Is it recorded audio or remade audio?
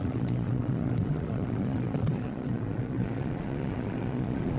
remade